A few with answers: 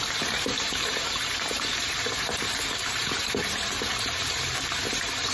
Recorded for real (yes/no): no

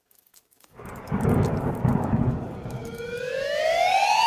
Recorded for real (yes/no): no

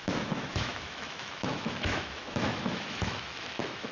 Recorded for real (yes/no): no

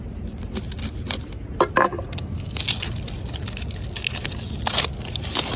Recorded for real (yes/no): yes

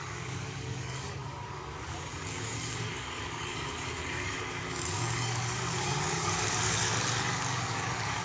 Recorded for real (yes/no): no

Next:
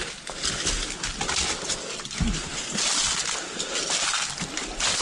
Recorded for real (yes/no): yes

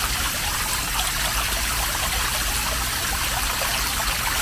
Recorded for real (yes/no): yes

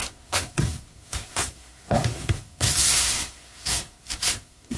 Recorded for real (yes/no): no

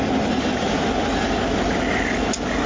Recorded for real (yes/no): yes